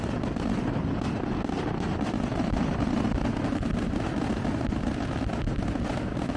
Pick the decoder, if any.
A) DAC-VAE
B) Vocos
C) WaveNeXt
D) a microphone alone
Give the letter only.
D